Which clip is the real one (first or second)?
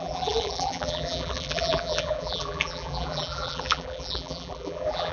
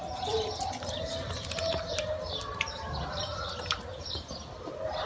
second